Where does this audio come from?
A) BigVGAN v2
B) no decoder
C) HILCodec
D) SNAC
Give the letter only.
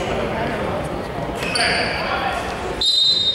A